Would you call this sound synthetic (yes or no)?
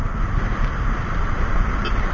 no